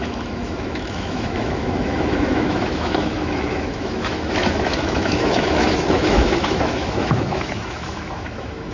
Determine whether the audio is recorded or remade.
remade